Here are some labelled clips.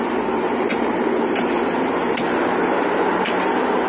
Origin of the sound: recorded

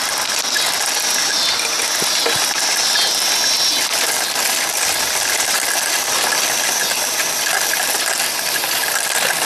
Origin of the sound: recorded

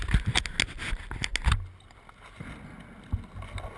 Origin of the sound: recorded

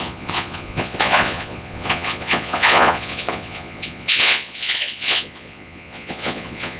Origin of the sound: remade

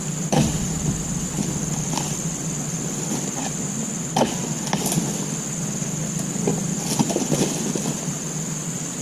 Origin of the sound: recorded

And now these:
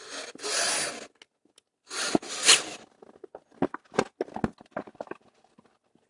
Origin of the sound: recorded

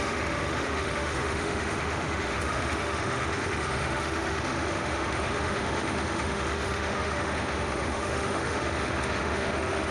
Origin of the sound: remade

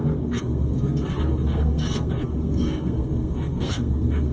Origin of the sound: remade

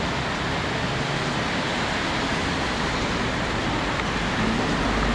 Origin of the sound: recorded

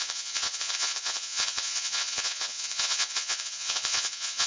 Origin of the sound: remade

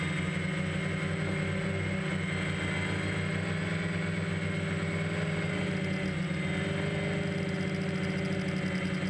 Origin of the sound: recorded